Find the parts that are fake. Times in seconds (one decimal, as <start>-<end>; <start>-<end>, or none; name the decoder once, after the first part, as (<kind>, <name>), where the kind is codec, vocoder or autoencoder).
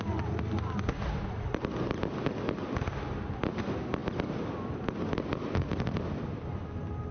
none